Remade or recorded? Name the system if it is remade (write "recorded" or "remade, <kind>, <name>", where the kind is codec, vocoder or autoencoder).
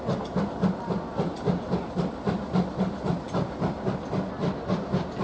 recorded